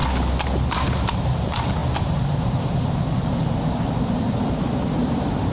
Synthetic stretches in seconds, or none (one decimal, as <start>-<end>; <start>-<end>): 0.7-5.5